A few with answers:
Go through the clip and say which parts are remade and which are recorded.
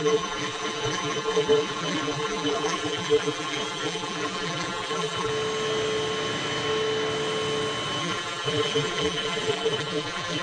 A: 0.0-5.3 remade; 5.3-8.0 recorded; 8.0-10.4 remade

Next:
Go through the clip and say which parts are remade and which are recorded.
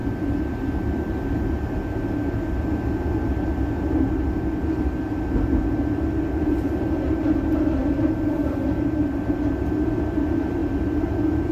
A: 0.0-11.5 recorded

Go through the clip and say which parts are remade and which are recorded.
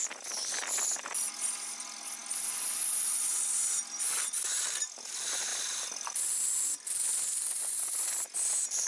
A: 0.0-5.5 recorded; 5.5-6.6 remade; 6.6-8.9 recorded